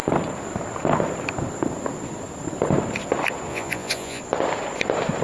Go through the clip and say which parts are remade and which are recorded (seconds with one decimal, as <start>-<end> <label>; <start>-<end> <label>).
0.0-3.5 recorded; 3.5-4.2 remade; 4.2-5.2 recorded